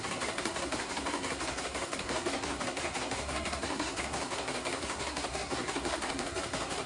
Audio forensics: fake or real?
fake